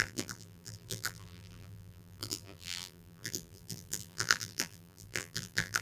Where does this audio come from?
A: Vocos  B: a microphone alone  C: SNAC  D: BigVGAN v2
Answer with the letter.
D